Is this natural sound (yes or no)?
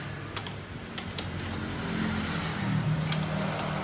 yes